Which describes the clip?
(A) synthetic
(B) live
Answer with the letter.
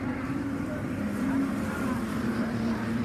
A